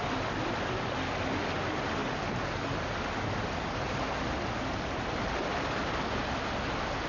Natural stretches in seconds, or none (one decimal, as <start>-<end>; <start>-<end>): 0.0-7.1